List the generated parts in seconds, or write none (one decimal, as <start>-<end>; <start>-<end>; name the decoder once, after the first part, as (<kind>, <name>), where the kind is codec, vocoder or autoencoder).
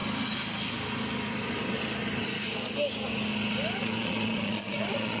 3.8-5.2 (vocoder, Vocos)